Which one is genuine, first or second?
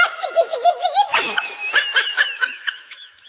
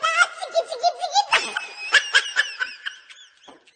second